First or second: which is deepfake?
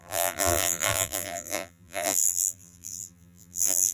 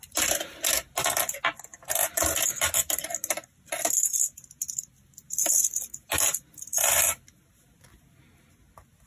first